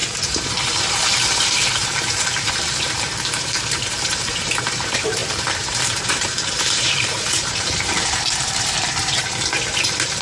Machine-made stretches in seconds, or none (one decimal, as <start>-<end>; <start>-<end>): 0.0-10.2